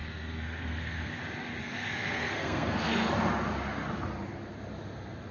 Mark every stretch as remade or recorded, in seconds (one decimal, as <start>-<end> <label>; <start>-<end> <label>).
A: 0.0-1.2 remade; 1.2-1.6 recorded; 1.6-3.1 remade; 3.1-5.3 recorded